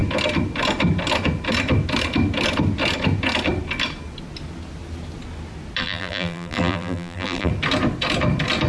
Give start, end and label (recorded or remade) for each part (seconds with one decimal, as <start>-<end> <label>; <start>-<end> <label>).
0.0-5.8 recorded; 5.8-7.5 remade; 7.5-8.7 recorded